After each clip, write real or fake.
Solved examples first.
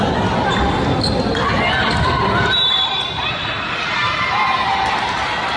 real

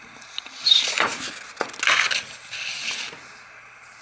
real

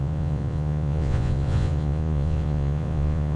fake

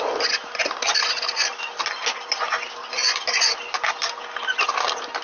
real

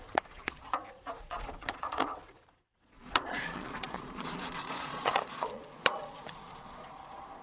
fake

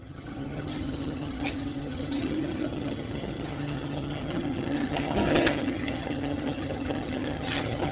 fake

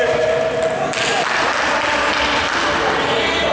real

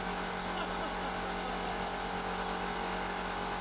real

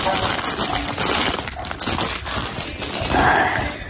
real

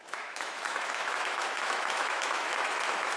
fake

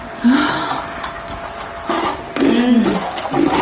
real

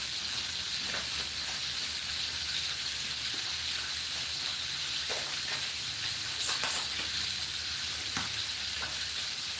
real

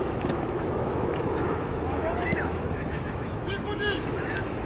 fake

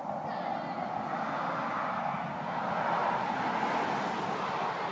real